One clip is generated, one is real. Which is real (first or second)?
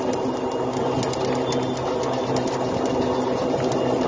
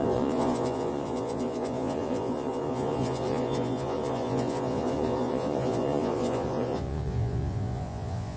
first